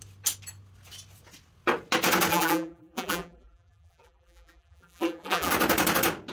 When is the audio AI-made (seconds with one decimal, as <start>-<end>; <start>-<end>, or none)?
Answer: 2.3-5.5